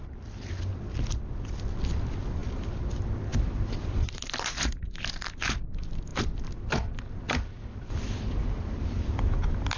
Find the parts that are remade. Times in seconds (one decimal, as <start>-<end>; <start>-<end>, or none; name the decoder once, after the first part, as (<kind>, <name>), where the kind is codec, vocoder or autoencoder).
none